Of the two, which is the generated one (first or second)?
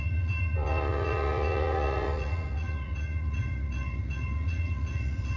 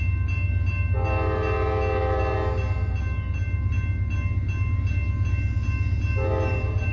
first